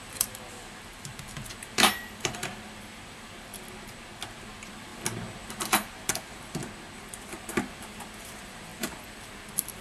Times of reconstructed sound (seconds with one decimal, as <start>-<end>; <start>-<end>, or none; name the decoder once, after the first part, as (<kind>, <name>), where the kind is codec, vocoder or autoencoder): 0.0-3.5 (vocoder, BigVGAN v2); 4.5-4.9; 6.1-6.6; 7.1-9.8